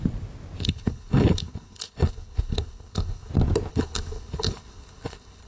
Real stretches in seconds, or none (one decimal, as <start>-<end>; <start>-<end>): 0.0-0.6; 3.3-3.7

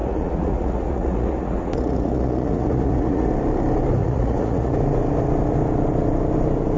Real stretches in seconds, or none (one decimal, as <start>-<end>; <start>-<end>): 3.3-4.0; 4.7-6.8

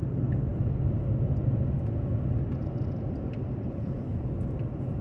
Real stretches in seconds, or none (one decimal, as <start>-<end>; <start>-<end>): 0.0-3.6; 4.3-5.0